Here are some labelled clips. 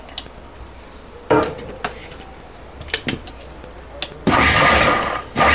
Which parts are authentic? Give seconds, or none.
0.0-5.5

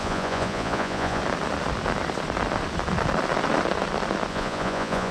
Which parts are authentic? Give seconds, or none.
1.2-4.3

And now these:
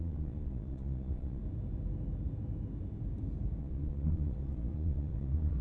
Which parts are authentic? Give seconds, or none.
1.4-3.6

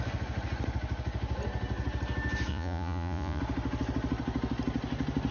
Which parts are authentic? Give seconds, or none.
0.0-2.5; 3.4-5.3